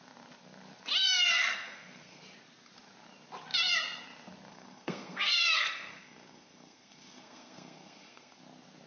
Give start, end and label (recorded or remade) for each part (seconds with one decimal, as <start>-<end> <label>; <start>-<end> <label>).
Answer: 0.0-1.0 recorded; 1.0-2.2 remade; 2.2-4.5 recorded; 4.5-8.4 remade; 8.4-8.9 recorded